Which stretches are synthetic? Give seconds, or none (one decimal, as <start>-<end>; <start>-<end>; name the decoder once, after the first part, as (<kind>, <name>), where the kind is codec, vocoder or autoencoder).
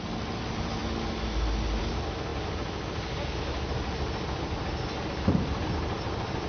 none